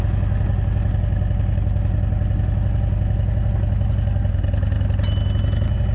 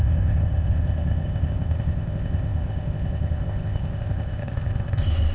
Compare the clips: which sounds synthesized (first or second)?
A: second